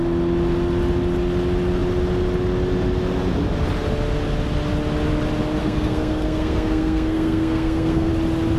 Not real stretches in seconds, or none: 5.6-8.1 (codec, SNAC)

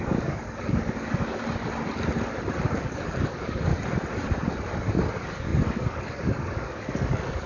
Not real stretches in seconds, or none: 0.0-1.4 (codec, DAC); 2.5-3.7; 4.9-7.5

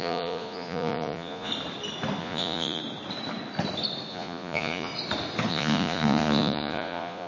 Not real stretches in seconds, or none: 0.0-1.5 (vocoder, Vocos); 2.2-2.8; 4.1-4.9; 5.5-7.3

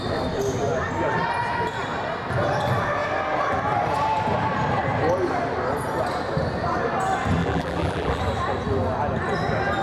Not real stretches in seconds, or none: 7.4-8.2 (vocoder, BigVGAN v2)

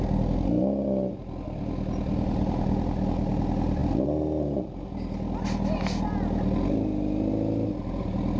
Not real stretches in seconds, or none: none

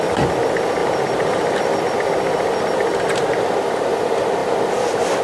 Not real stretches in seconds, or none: 0.8-3.9 (vocoder, BigVGAN v2)

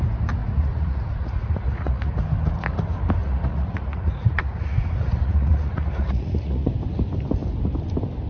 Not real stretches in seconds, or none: 0.4-2.2 (vocoder, Vocos); 3.2-6.7

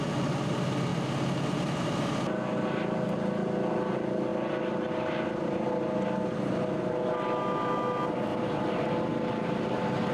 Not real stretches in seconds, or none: 0.9-1.9 (vocoder, BigVGAN v2); 8.3-8.9